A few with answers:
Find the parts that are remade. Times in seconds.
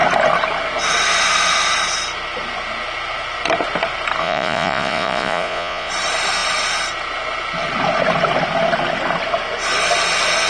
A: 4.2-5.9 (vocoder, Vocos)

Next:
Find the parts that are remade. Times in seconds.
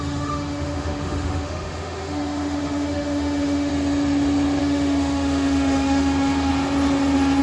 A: 0.0-3.7 (autoencoder, DAC-VAE); 4.6-6.5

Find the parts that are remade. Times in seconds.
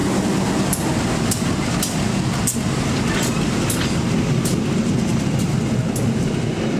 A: none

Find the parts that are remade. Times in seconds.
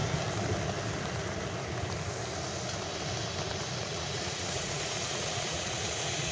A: 3.8-6.3 (vocoder, Vocos)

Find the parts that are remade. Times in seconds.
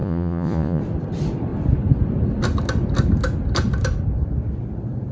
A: 0.0-0.8 (vocoder, Vocos)